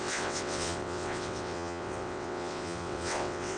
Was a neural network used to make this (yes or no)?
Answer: yes